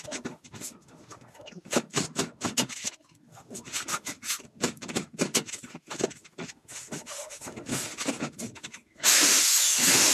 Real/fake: fake